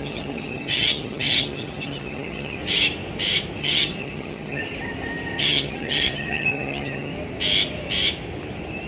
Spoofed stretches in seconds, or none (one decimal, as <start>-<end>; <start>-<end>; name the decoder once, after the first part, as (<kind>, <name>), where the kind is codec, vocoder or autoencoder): 0.0-2.6 (vocoder, HiFi-GAN); 3.6-4.6; 5.4-7.1